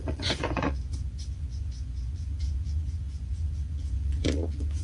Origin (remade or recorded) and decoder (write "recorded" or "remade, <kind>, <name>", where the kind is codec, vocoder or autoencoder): remade, vocoder, Vocos